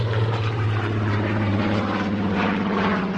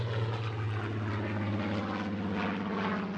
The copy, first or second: first